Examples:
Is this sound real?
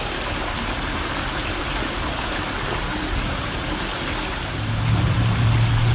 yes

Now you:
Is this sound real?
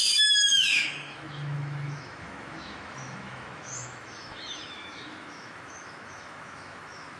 no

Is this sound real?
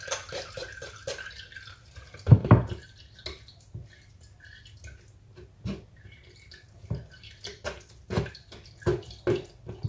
yes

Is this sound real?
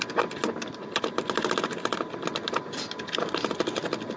yes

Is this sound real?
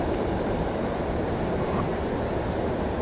yes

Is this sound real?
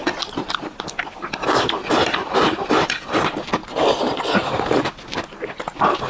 yes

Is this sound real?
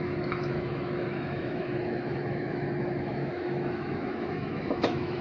no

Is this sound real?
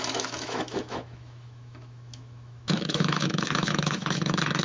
no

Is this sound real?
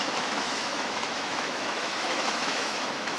no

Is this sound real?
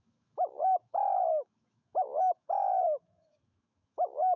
no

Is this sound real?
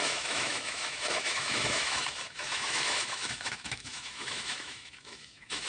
no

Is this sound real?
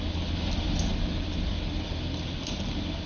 yes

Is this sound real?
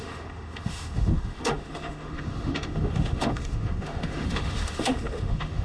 no